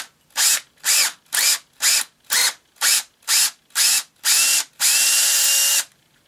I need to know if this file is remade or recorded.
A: recorded